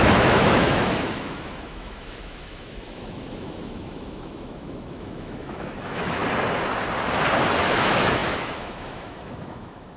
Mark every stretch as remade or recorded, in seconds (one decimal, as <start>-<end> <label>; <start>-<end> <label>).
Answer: 0.0-6.2 remade; 6.2-7.6 recorded; 7.6-10.0 remade